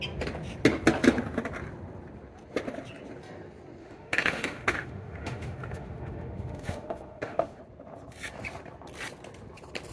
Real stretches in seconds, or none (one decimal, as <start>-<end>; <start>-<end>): 0.0-3.8; 7.6-9.9